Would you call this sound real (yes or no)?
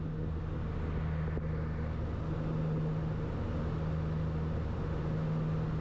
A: yes